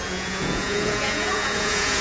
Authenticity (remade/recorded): remade